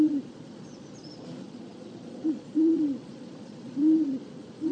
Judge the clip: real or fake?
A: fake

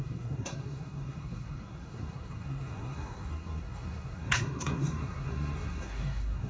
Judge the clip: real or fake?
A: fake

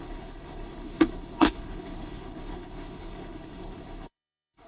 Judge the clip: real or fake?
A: fake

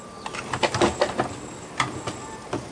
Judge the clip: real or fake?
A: real